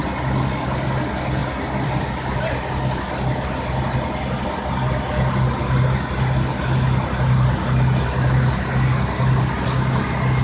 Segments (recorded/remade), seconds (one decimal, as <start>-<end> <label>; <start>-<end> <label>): 0.0-1.4 recorded; 1.4-2.0 remade; 2.0-10.4 recorded